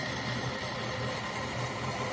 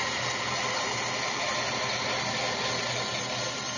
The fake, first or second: first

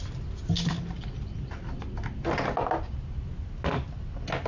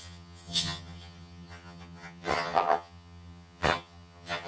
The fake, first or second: second